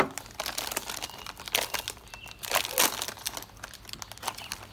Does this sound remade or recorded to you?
recorded